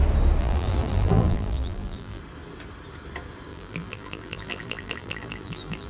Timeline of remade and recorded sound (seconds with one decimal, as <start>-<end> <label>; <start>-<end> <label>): 0.0-0.4 recorded; 0.4-2.2 remade; 2.2-3.5 recorded; 3.5-5.9 remade